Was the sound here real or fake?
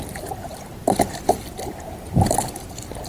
real